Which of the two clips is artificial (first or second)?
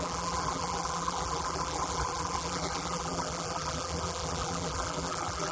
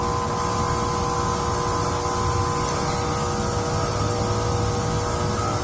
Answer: first